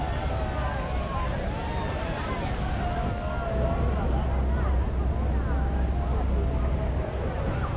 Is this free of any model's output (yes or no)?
yes